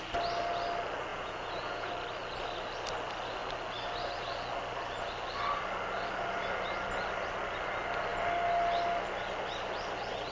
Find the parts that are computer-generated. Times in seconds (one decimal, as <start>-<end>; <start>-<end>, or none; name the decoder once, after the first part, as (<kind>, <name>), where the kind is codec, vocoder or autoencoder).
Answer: 1.1-1.9 (vocoder, Vocos)